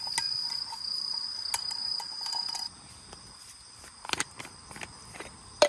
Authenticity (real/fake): real